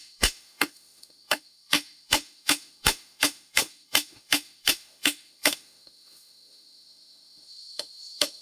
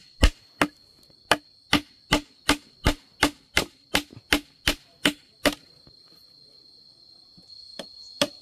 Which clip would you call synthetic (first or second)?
first